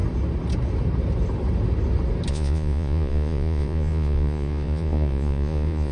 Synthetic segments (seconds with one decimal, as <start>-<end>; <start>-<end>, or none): 2.3-5.9